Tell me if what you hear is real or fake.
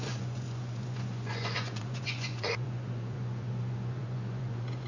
fake